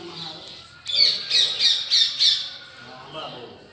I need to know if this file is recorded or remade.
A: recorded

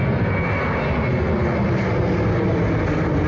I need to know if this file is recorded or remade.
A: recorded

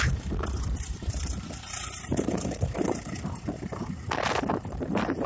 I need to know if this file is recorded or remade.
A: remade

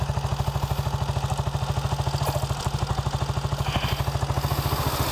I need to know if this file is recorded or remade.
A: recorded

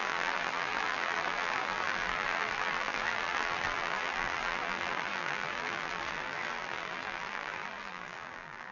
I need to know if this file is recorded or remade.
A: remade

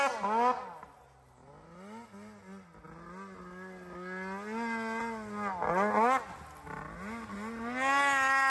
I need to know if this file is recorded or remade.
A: recorded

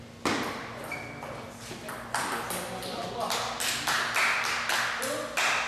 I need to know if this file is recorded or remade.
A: recorded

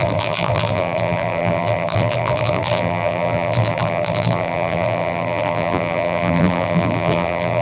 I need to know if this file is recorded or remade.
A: remade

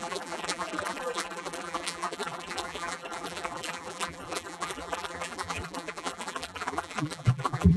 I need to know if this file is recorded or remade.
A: remade